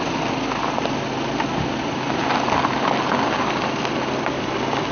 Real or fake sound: real